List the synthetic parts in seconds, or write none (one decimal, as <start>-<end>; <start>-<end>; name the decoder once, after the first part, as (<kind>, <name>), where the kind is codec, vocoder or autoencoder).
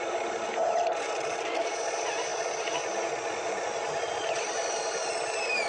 0.0-2.3 (vocoder, BigVGAN v2); 3.4-5.7